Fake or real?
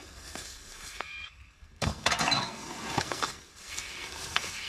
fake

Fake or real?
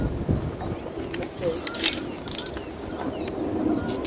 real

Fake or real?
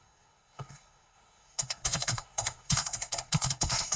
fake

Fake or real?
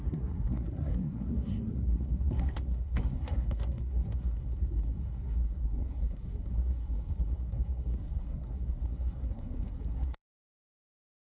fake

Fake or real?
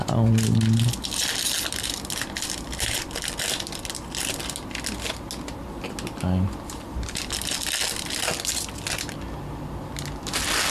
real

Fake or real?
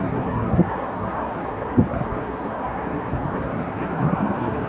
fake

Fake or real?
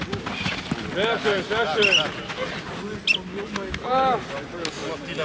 real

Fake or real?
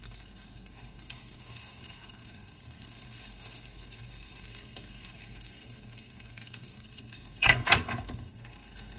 fake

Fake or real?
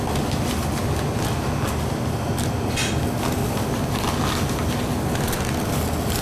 real